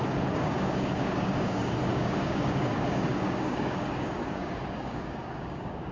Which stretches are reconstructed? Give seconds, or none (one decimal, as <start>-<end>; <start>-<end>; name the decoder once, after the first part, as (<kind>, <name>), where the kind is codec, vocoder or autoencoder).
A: 0.0-5.9 (codec, DAC)